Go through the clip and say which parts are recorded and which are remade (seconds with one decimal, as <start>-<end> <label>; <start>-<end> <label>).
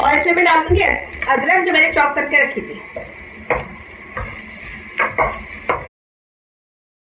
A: 0.0-1.7 remade; 1.7-7.0 recorded